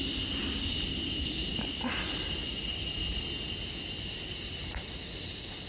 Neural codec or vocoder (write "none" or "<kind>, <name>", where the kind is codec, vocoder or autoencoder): none